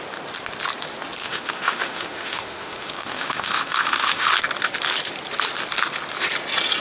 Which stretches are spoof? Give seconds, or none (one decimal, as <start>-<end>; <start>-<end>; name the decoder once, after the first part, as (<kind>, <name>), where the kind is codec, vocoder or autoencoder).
1.2-4.3 (autoencoder, DAC-VAE)